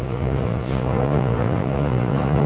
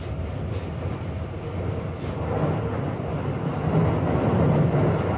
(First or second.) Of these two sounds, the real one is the second